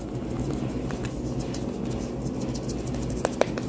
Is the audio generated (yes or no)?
no